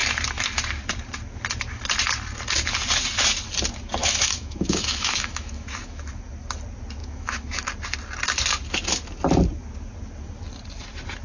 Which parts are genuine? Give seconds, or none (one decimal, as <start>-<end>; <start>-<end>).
0.0-4.0; 6.1-7.0; 7.7-11.2